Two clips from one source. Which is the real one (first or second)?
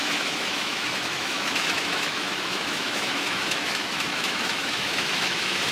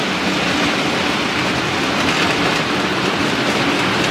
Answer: second